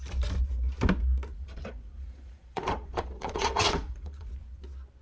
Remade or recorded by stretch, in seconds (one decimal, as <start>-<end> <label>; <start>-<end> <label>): 0.0-1.3 recorded; 1.3-4.3 remade; 4.3-5.0 recorded